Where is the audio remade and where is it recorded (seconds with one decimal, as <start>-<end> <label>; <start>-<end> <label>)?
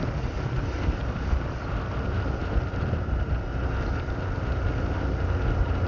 0.0-1.0 recorded; 1.0-1.6 remade; 1.6-5.9 recorded